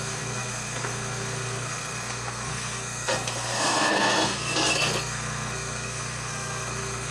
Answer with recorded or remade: remade